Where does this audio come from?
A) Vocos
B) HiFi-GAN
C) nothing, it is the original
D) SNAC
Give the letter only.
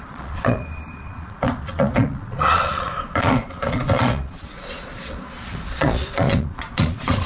A